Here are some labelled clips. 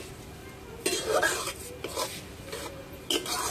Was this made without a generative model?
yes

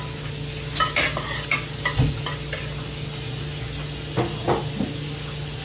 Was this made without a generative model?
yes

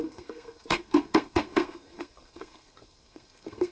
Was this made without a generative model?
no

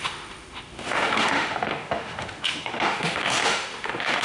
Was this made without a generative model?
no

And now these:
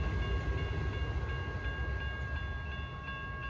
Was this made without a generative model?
yes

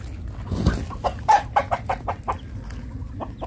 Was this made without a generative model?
yes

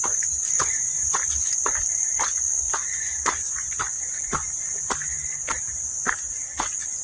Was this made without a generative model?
yes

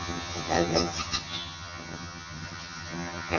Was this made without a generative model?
no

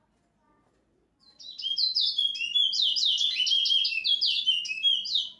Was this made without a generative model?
yes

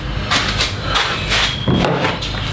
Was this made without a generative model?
yes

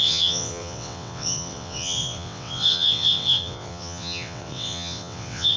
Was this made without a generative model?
no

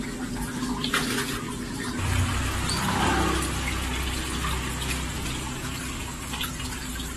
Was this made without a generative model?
no